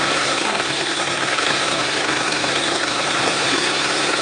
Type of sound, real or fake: fake